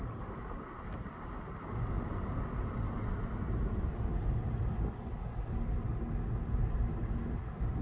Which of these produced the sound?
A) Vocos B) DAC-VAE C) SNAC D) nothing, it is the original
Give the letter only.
D